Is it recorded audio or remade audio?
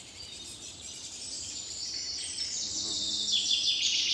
remade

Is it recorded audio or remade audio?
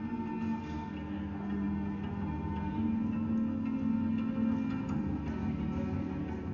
recorded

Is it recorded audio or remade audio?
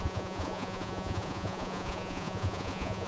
remade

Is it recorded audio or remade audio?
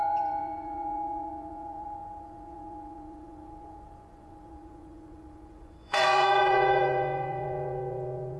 remade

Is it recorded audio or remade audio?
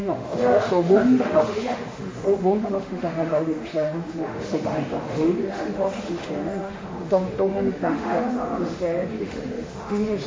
remade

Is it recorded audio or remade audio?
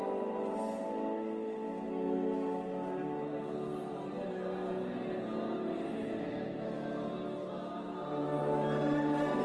recorded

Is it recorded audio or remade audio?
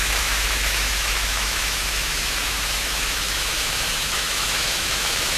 remade